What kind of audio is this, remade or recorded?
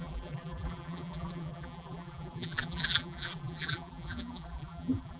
remade